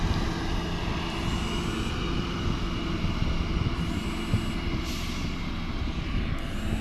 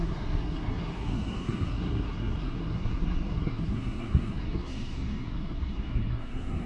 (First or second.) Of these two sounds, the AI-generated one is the second